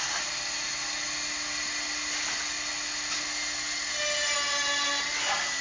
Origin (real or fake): real